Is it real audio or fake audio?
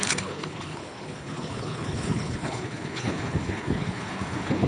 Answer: fake